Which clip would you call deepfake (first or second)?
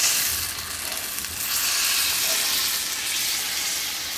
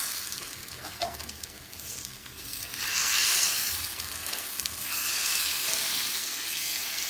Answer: second